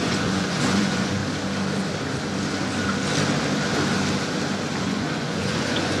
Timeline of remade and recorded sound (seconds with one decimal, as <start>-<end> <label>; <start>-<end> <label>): 0.0-1.2 remade; 1.2-4.8 recorded; 4.8-6.0 remade